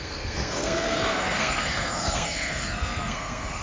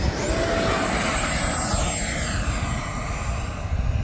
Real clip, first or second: second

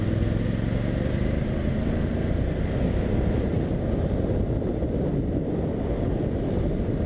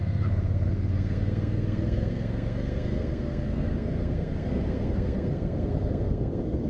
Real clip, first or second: first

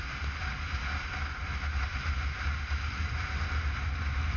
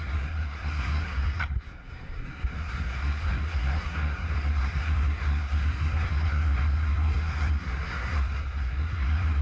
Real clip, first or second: first